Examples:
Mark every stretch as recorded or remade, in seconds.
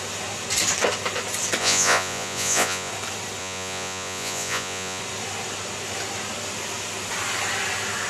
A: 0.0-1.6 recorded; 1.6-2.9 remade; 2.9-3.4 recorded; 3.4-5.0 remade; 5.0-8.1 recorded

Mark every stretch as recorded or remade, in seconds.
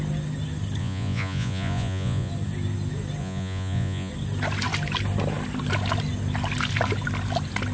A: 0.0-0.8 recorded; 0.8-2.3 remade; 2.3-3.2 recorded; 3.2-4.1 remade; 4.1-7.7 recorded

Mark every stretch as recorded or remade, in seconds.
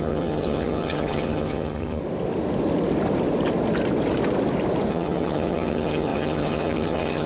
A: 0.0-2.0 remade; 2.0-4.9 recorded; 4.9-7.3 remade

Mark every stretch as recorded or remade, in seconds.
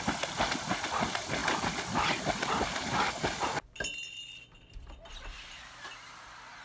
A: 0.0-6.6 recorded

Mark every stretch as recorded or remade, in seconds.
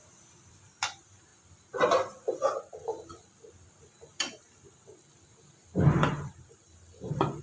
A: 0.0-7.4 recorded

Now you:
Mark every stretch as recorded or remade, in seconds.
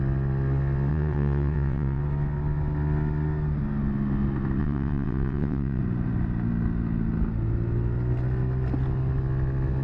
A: 0.0-0.9 recorded; 0.9-2.0 remade; 2.0-4.6 recorded; 4.6-5.8 remade; 5.8-9.8 recorded